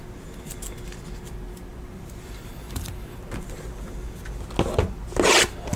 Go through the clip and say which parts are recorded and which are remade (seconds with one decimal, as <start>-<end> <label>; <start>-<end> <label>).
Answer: 0.0-1.7 recorded; 1.7-2.9 remade; 2.9-5.8 recorded